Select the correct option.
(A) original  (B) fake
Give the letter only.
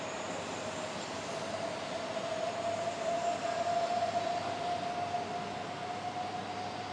A